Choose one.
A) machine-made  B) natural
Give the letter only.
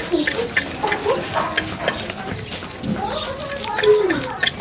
B